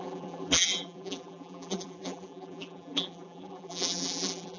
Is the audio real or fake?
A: fake